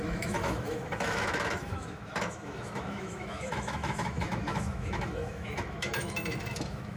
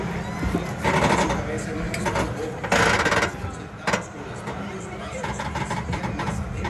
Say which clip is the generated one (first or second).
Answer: first